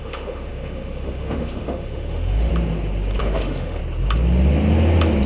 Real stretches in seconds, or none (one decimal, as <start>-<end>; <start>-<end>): 2.5-3.2; 3.8-5.3